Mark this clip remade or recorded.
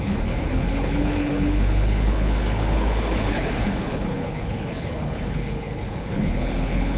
remade